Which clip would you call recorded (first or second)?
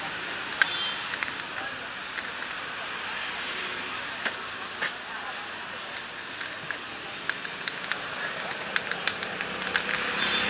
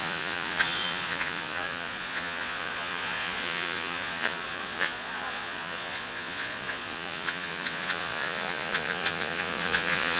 first